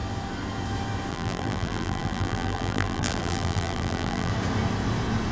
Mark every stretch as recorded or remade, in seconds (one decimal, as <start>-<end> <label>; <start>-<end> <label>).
0.0-1.1 recorded; 1.1-4.3 remade; 4.3-5.3 recorded